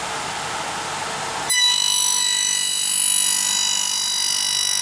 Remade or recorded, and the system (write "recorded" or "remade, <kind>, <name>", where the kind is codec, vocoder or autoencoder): recorded